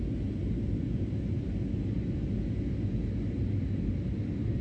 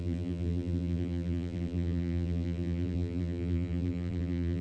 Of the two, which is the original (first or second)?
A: first